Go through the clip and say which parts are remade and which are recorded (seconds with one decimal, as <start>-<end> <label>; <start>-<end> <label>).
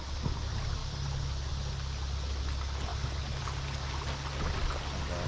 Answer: 0.0-5.3 recorded